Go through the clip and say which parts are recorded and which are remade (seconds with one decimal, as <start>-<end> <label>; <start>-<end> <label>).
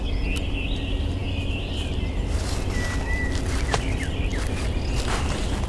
0.0-5.7 recorded